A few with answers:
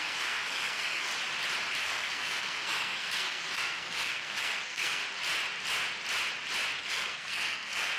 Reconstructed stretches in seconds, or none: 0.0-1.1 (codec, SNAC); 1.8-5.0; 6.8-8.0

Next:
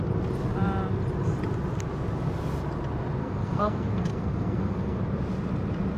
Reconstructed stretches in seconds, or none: 3.2-5.0 (codec, SNAC)

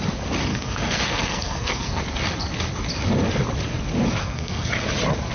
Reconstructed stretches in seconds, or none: 0.5-2.0 (codec, SNAC); 4.2-4.7

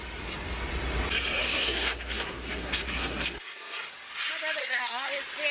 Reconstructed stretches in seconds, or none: 1.4-3.9 (codec, SNAC); 4.6-5.1

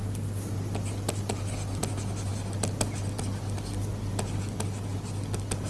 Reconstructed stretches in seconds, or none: none

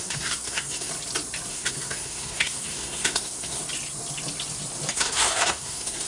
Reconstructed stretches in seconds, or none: 0.0-0.9 (codec, SNAC); 1.5-3.6; 4.9-6.1

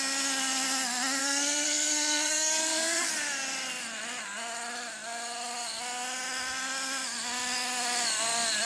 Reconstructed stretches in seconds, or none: 1.2-3.1 (codec, SNAC)